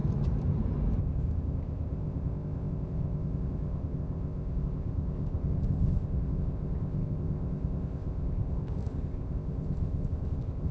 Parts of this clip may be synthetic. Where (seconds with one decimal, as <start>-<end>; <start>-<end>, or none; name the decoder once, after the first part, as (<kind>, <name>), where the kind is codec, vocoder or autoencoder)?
1.0-10.7 (codec, ZipCodec)